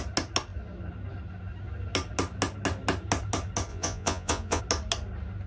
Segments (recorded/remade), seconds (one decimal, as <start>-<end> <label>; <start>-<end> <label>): 0.0-3.7 recorded; 3.7-4.6 remade; 4.6-5.5 recorded

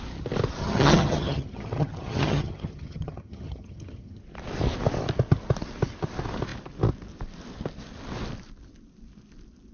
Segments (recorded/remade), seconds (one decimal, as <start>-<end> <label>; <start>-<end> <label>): 0.0-0.6 recorded; 0.6-4.2 remade; 4.2-9.7 recorded

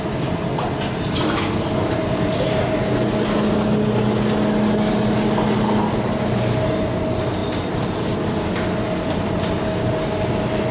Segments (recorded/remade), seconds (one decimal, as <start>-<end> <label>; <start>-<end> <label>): 0.0-10.7 recorded